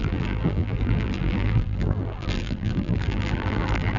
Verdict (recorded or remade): remade